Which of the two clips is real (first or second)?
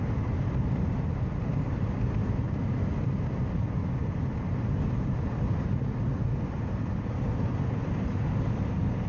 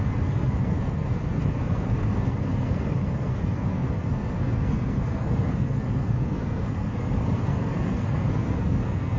first